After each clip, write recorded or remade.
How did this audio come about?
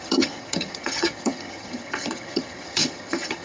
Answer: remade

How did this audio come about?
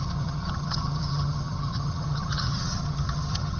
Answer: remade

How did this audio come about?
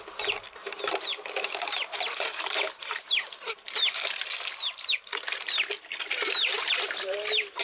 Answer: recorded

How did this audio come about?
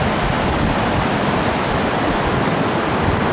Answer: recorded